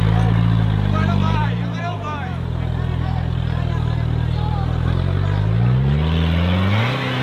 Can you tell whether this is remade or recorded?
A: recorded